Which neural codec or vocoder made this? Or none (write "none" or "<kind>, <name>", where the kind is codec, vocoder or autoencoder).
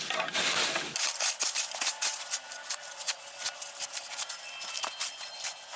none